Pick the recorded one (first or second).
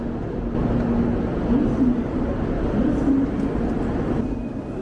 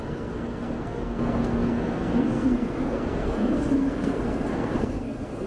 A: first